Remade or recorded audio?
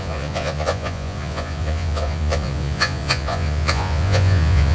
remade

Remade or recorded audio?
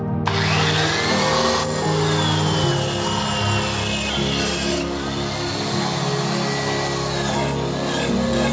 recorded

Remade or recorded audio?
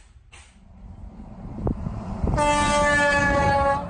recorded